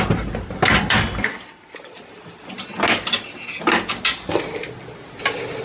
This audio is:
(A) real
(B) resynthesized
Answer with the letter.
A